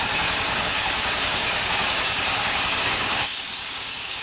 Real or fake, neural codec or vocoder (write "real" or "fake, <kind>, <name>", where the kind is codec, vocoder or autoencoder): fake, codec, DAC